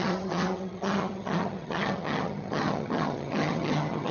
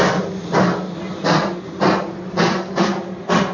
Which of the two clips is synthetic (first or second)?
first